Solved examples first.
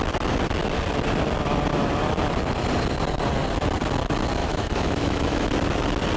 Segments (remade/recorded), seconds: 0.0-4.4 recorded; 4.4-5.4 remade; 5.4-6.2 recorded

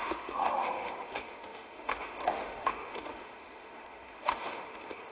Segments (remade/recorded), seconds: 0.0-5.1 remade

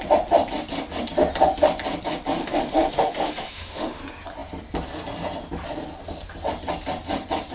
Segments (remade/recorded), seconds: 0.0-2.4 recorded; 2.4-4.0 remade; 4.0-7.5 recorded